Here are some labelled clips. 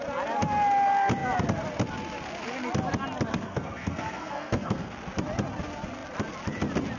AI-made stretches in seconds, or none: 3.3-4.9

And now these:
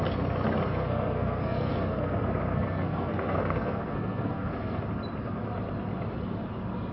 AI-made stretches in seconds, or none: 0.7-4.8

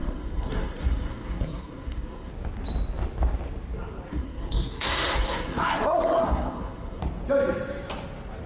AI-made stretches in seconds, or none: 0.0-2.3; 4.1-7.0

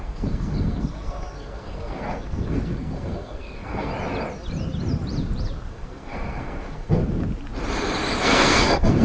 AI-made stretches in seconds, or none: 0.0-3.9; 5.7-7.0; 8.2-9.0

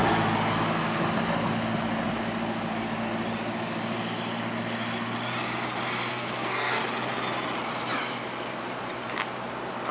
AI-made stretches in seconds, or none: 6.1-6.8